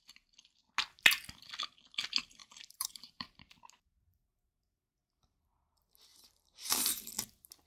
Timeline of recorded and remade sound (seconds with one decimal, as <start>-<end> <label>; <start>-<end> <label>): 0.0-2.4 recorded; 2.4-3.4 remade; 3.4-6.1 recorded; 6.1-7.1 remade; 7.1-7.7 recorded